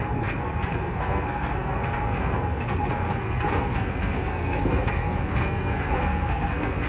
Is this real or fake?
fake